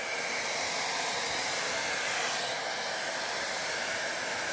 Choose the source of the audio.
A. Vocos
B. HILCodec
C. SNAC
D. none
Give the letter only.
D